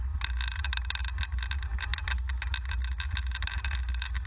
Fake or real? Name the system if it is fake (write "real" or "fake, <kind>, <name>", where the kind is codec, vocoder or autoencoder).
real